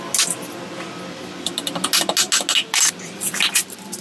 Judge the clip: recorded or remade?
recorded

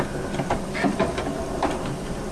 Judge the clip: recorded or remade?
recorded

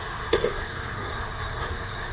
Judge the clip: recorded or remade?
remade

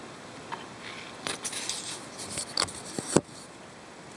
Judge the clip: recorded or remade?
recorded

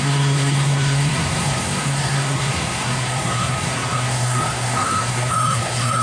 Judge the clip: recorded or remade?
remade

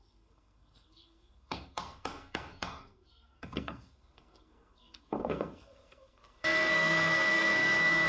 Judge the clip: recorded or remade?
remade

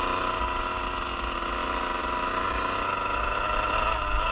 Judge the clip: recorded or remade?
recorded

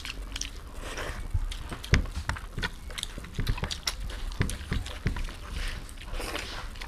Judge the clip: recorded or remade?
recorded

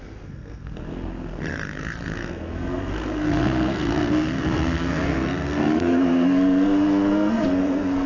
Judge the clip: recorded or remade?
remade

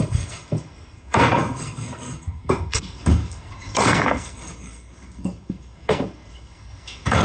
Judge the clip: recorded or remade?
remade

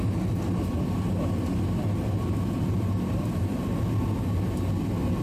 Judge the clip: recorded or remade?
recorded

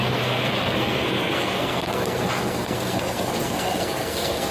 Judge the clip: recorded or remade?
remade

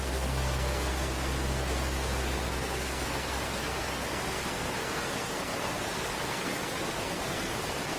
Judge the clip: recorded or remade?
remade